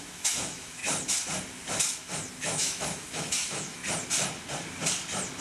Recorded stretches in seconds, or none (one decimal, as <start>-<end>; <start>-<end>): 0.8-2.4; 3.8-5.4